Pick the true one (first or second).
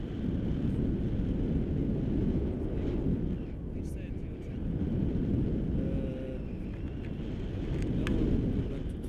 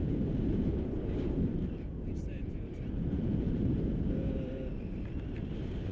first